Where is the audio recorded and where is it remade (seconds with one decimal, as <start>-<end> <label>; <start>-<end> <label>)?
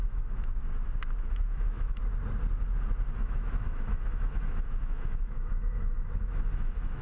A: 0.0-0.6 remade; 0.6-1.3 recorded; 1.3-2.0 remade; 2.0-3.2 recorded; 3.2-7.0 remade